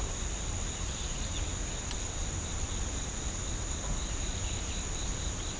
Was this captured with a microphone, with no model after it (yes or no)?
yes